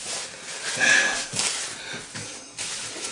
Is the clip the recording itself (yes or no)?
yes